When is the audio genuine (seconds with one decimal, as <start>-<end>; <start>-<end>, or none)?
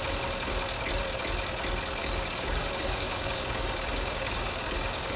0.0-2.0